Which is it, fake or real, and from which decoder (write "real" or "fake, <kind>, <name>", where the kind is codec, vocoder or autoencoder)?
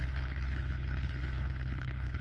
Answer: fake, codec, HILCodec